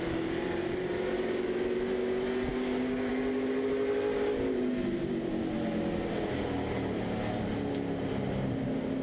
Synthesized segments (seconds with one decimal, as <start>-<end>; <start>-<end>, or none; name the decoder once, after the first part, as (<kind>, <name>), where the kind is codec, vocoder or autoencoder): 2.5-3.1 (codec, DAC)